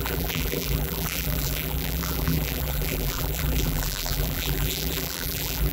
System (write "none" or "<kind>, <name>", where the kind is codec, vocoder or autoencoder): vocoder, BigVGAN v2